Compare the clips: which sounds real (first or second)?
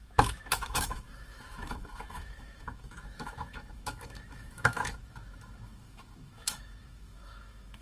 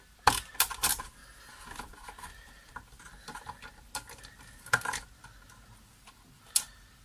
second